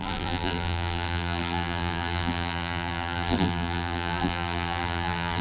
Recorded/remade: remade